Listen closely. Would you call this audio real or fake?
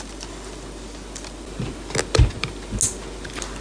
real